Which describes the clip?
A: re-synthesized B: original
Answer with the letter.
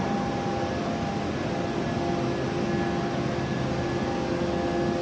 B